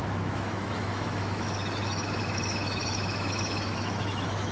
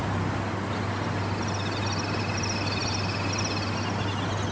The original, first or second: second